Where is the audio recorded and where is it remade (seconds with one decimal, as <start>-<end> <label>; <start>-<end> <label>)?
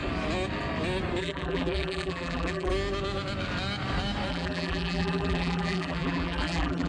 0.0-1.2 recorded; 1.2-2.7 remade; 2.7-4.3 recorded; 4.3-6.9 remade